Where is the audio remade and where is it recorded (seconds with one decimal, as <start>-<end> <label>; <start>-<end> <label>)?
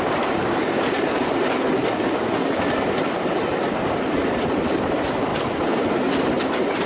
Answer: 0.0-1.8 remade; 1.8-3.4 recorded; 3.4-6.9 remade